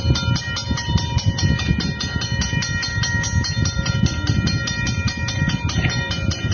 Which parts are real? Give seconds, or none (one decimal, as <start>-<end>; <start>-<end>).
0.0-6.5